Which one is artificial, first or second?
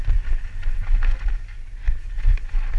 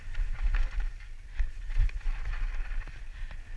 second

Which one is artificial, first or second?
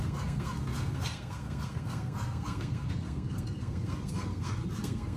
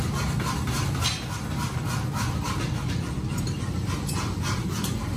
first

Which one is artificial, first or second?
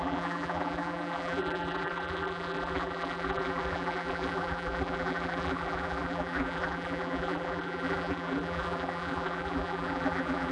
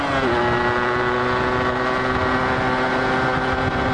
first